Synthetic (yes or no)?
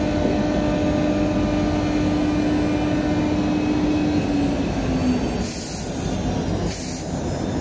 no